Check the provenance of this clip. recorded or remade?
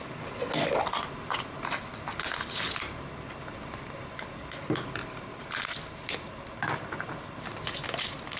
recorded